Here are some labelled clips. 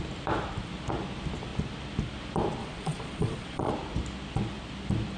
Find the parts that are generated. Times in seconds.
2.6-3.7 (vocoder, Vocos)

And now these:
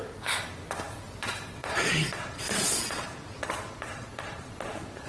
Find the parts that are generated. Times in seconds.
1.6-5.1 (vocoder, Vocos)

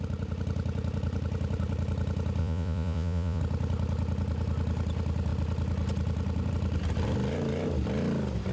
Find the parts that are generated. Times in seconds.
2.4-3.4 (vocoder, Vocos)

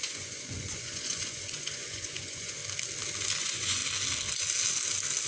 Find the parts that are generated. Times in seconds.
0.0-2.6 (vocoder, Vocos); 3.4-3.8

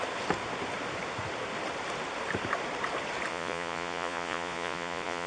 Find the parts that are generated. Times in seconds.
3.3-5.3 (vocoder, Vocos)